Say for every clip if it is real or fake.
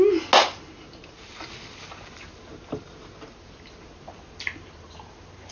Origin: real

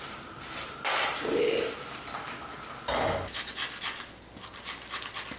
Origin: real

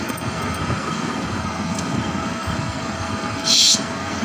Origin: fake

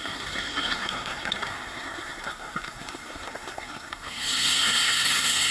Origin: fake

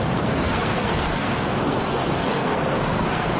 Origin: fake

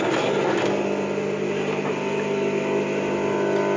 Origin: real